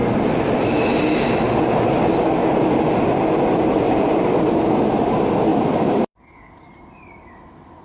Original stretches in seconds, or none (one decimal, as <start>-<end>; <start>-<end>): 0.0-3.6; 4.8-5.5; 6.5-7.8